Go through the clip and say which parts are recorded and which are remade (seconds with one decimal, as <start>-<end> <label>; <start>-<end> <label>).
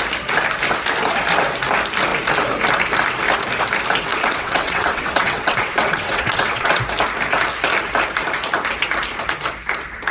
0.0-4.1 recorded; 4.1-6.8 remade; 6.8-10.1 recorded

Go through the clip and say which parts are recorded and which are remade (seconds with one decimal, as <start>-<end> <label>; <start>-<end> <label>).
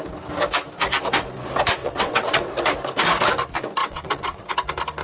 0.0-1.8 recorded; 1.8-2.4 remade; 2.4-3.8 recorded; 3.8-4.4 remade; 4.4-5.0 recorded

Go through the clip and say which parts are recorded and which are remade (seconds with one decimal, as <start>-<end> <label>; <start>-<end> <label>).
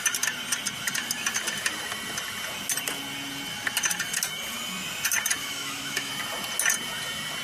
0.0-5.4 recorded; 5.4-6.1 remade; 6.1-7.4 recorded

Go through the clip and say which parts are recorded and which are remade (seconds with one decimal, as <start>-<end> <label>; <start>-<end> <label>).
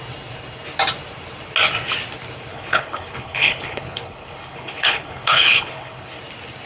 0.0-2.5 recorded; 2.5-6.2 remade; 6.2-6.7 recorded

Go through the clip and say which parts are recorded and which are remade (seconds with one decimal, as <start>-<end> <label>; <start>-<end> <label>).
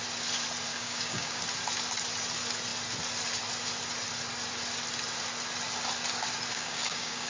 0.0-0.7 recorded; 0.7-1.4 remade; 1.4-6.5 recorded; 6.5-7.3 remade